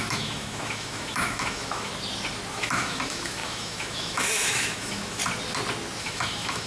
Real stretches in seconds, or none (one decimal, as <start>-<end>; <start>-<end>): 1.9-2.5; 5.2-6.0